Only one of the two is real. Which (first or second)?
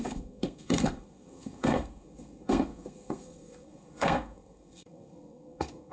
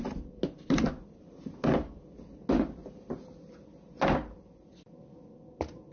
second